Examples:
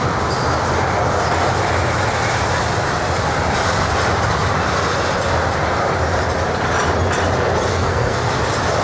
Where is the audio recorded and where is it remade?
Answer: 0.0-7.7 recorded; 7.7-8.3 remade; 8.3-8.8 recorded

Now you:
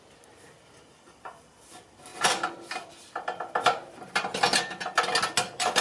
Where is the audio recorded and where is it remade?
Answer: 0.0-5.8 recorded

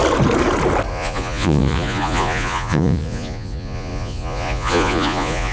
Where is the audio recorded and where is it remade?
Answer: 0.0-0.9 recorded; 0.9-5.5 remade

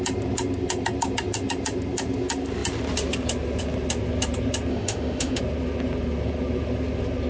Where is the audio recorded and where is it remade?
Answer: 0.0-4.7 recorded; 4.7-5.4 remade; 5.4-7.3 recorded

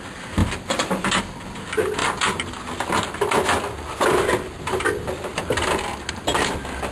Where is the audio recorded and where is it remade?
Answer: 0.0-0.4 recorded; 0.4-1.2 remade; 1.2-6.9 recorded

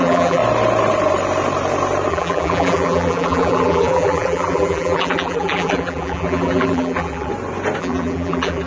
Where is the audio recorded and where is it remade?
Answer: 0.0-0.4 remade; 0.4-2.1 recorded; 2.1-7.3 remade; 7.3-7.8 recorded; 7.8-8.7 remade

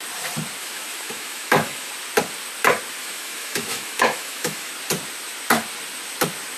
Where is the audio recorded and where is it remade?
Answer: 0.0-0.6 recorded; 0.6-1.9 remade; 1.9-3.0 recorded; 3.0-4.7 remade; 4.7-6.6 recorded

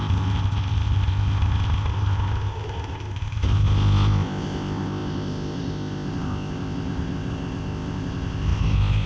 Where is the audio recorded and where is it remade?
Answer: 0.0-9.1 remade